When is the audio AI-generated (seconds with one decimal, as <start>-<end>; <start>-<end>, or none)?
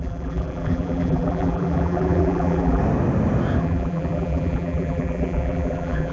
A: 0.0-2.8; 3.6-6.1